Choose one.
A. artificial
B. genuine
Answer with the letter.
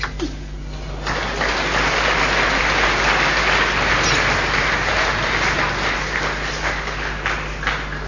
B